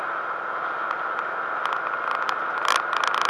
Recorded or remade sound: recorded